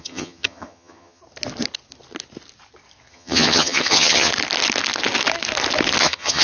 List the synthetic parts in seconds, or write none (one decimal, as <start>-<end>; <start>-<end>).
0.0-1.2; 3.1-4.3; 6.0-6.4